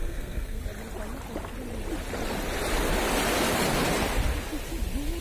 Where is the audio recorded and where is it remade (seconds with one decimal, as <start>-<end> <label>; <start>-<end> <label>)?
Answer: 0.0-0.6 remade; 0.6-5.2 recorded